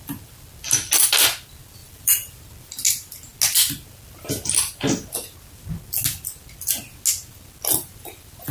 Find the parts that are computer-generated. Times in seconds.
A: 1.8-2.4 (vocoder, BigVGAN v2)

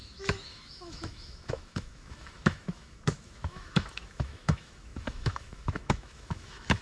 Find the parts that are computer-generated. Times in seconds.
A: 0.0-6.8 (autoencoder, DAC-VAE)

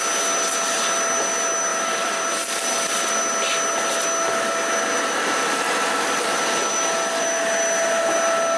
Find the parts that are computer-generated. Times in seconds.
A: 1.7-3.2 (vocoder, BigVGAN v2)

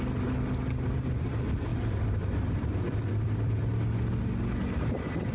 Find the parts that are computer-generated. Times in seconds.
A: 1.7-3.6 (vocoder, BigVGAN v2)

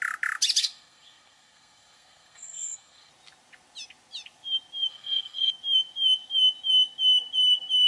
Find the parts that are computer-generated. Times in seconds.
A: 0.6-3.1 (codec, SNAC); 4.9-5.5